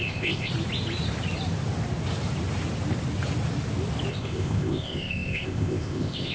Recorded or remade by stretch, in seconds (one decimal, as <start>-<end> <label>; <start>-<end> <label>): 0.0-0.5 remade; 0.5-4.1 recorded; 4.1-6.3 remade